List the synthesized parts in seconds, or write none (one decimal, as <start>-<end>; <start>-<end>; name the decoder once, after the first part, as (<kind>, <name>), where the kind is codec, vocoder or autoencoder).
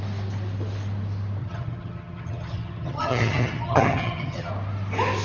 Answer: 1.4-4.5 (vocoder, HiFi-GAN)